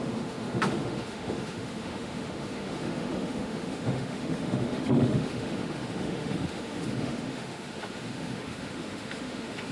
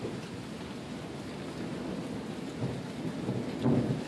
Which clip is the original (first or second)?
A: second